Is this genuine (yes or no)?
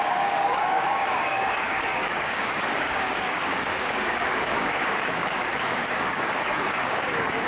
no